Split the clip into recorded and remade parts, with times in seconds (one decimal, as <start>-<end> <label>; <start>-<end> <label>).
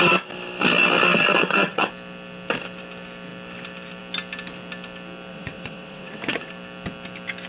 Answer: 0.0-1.4 recorded; 1.4-1.9 remade; 1.9-5.3 recorded; 5.3-6.5 remade; 6.5-7.5 recorded